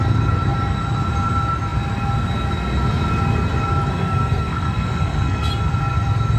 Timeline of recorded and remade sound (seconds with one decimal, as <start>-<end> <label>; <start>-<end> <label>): 0.0-3.9 recorded; 3.9-5.5 remade; 5.5-6.4 recorded